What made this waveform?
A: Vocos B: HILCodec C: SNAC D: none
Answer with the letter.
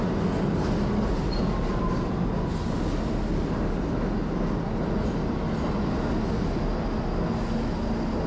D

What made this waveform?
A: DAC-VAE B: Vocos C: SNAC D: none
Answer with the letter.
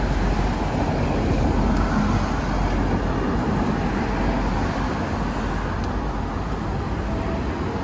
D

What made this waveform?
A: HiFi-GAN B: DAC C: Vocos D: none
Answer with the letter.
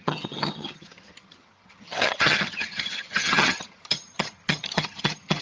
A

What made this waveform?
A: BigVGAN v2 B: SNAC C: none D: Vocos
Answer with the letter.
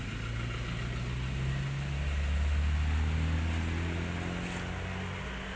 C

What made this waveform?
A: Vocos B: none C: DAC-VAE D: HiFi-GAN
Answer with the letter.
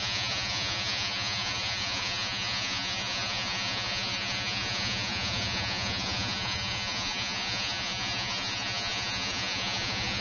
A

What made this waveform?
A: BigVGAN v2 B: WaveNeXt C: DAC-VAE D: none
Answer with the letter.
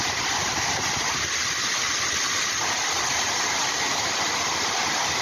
D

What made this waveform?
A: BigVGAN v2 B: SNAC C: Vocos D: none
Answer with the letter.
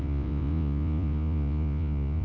C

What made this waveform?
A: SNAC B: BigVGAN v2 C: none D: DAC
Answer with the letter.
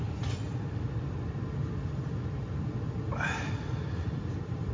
B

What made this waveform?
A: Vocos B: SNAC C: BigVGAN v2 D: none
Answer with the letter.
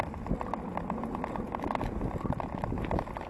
D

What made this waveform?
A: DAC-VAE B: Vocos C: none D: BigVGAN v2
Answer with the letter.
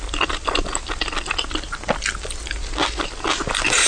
C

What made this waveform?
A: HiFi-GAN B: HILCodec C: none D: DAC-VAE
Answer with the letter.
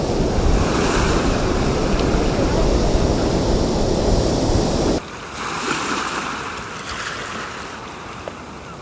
C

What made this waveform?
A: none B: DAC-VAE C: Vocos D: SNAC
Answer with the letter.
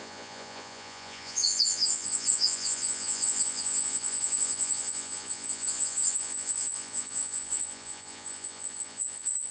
C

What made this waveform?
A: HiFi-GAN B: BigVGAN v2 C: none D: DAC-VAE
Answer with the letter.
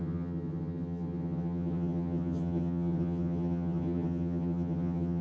A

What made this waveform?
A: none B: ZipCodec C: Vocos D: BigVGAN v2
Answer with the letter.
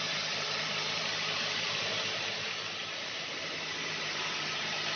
D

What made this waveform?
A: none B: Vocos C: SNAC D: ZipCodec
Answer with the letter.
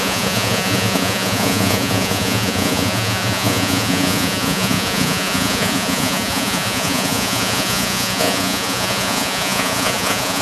B